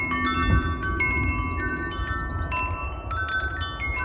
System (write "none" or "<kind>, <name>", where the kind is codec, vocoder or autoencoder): none